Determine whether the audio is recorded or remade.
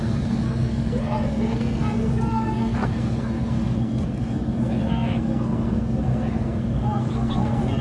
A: remade